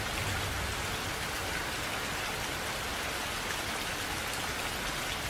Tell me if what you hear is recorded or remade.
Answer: recorded